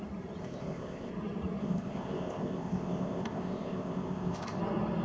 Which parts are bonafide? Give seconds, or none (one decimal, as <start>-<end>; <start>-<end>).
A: 0.0-0.4; 1.1-1.6; 4.6-5.0

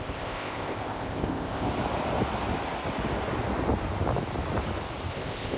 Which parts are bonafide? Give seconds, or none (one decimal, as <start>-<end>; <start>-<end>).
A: 1.7-5.1

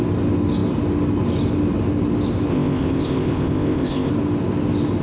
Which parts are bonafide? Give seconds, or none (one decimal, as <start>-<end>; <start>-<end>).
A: 0.0-2.5; 4.1-5.0

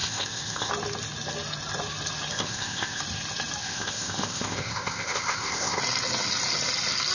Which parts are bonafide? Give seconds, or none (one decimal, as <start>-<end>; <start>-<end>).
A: 0.7-2.3; 3.0-3.6; 5.8-7.1